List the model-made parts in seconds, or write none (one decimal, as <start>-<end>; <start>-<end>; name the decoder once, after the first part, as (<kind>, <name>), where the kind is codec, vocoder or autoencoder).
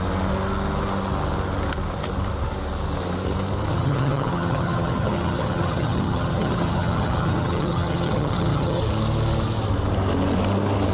3.7-8.8 (vocoder, HiFi-GAN)